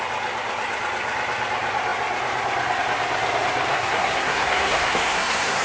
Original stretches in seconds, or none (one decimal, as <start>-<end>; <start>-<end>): 0.0-3.7